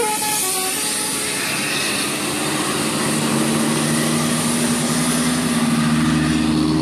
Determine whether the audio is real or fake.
real